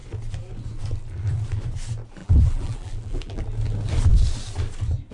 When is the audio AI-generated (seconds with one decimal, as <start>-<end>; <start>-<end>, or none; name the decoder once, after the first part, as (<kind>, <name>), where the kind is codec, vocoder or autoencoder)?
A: 2.2-3.4 (vocoder, BigVGAN v2)